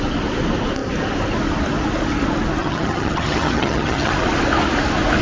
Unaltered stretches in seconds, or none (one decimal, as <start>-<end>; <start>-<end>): 0.0-2.6; 4.1-5.2